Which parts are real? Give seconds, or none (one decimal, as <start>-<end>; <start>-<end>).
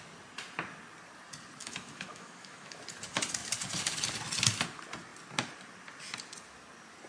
0.0-1.6; 2.8-7.1